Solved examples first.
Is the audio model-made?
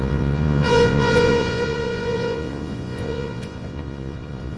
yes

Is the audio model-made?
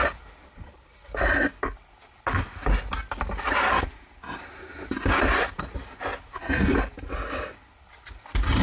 no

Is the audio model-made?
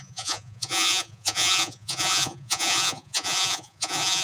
yes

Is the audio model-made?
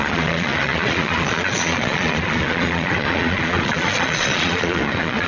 yes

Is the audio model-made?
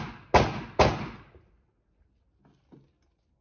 no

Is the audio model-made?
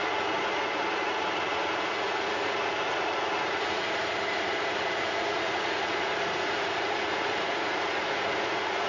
yes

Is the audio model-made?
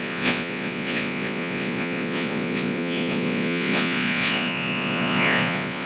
yes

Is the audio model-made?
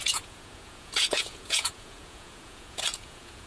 yes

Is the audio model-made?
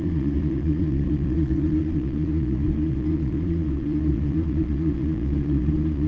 yes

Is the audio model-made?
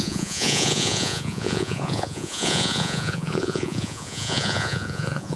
yes